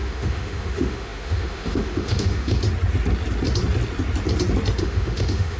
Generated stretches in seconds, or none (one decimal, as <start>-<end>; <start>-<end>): 0.0-2.6; 4.8-5.6